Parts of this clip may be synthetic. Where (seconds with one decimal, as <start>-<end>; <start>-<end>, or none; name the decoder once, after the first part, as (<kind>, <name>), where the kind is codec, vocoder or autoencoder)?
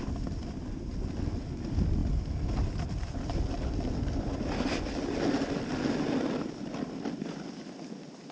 none